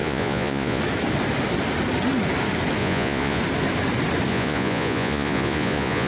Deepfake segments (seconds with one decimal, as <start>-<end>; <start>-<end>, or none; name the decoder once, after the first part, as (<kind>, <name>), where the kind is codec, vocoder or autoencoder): 0.0-0.8 (vocoder, Vocos); 2.8-3.4; 4.3-6.1